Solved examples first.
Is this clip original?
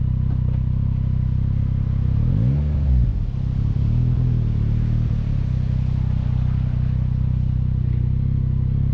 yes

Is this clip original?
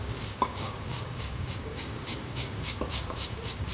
no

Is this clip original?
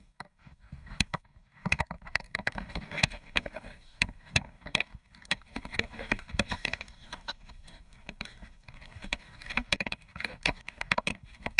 no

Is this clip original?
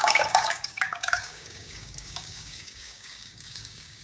no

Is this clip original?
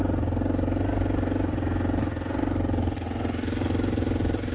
yes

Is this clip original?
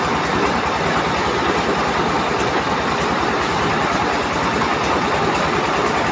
yes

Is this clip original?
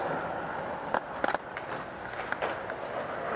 yes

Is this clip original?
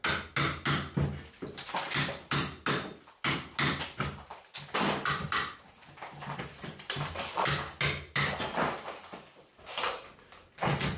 yes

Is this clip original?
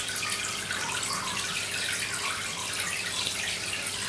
yes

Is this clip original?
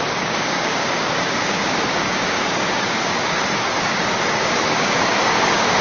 no